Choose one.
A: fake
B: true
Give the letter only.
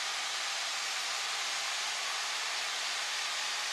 B